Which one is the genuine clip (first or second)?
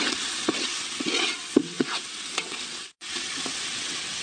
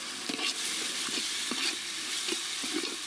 second